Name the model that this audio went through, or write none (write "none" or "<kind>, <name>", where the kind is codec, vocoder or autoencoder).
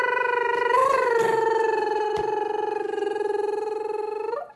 none